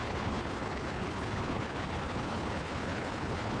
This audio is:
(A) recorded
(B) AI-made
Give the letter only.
B